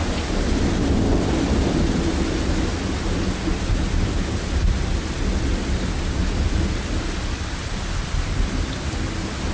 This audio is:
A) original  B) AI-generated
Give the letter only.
A